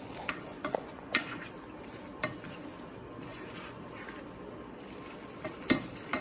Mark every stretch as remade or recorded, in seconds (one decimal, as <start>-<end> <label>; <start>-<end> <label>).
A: 0.0-0.5 recorded; 0.5-1.5 remade; 1.5-3.3 recorded; 3.3-3.8 remade; 3.8-6.2 recorded